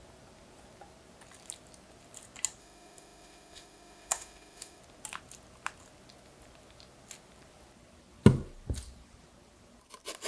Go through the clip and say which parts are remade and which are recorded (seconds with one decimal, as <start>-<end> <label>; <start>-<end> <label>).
0.0-2.6 recorded; 2.6-4.8 remade; 4.8-10.3 recorded